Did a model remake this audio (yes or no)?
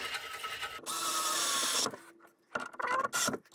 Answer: no